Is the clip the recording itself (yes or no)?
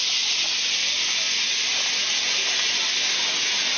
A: yes